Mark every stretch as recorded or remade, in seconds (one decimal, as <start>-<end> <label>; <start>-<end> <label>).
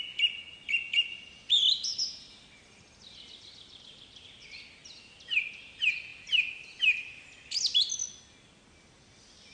0.0-9.5 recorded